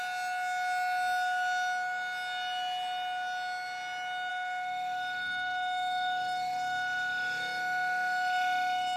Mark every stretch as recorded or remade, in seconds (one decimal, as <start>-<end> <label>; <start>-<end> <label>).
0.0-4.3 recorded; 4.3-9.0 remade